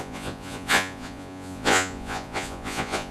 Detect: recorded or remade remade